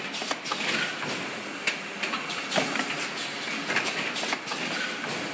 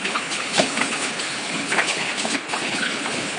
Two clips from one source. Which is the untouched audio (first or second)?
first